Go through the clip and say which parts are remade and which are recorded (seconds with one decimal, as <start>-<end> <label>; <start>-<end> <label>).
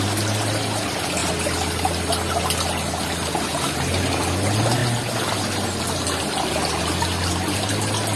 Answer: 0.0-8.2 recorded